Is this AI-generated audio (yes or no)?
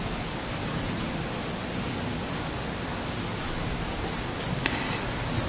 no